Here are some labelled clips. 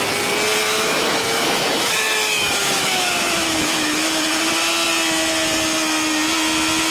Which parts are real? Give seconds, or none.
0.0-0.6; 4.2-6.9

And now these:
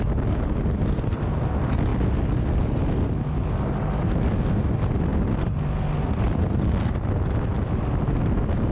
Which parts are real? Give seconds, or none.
0.0-8.7

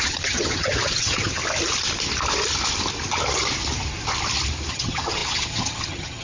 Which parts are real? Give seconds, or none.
1.4-4.7